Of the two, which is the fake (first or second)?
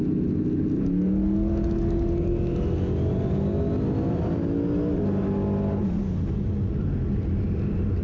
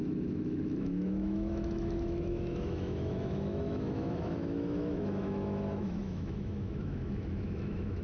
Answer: second